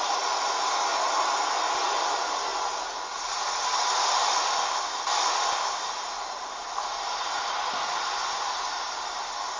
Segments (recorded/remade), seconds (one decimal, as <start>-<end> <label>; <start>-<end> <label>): 0.0-9.6 recorded